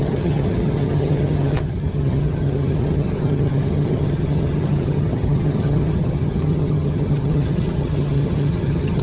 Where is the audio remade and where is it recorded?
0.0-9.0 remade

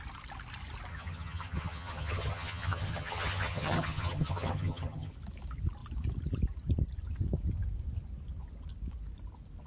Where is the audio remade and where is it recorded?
0.0-0.9 recorded; 0.9-5.1 remade; 5.1-9.7 recorded

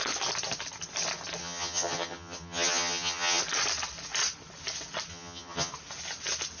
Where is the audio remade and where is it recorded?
0.0-1.4 recorded; 1.4-3.4 remade; 3.4-5.1 recorded; 5.1-5.7 remade; 5.7-6.6 recorded

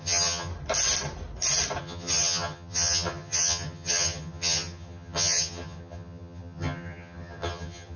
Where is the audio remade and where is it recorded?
0.0-0.5 remade; 0.5-1.8 recorded; 1.8-8.0 remade

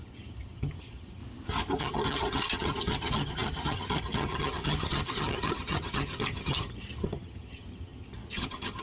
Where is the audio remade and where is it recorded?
0.0-1.2 remade; 1.2-1.8 recorded; 1.8-8.8 remade

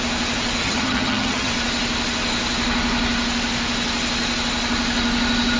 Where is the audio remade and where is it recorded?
0.0-0.6 recorded; 0.6-1.5 remade; 1.5-5.6 recorded